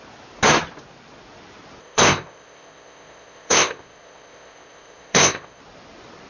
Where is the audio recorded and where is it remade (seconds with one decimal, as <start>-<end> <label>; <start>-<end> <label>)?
0.0-1.8 recorded; 1.8-5.6 remade; 5.6-6.3 recorded